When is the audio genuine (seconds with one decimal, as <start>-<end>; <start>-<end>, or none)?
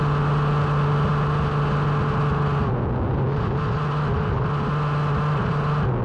0.0-6.0